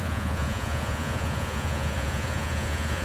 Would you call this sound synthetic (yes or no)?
yes